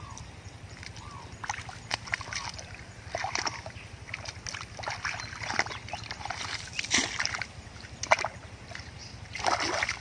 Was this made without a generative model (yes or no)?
yes